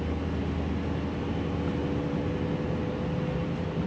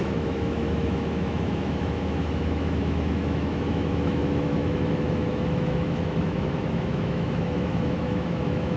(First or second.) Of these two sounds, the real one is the first